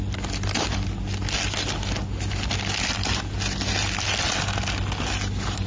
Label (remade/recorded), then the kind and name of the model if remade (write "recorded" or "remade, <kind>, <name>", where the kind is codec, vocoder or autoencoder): recorded